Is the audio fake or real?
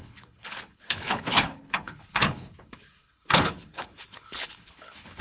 fake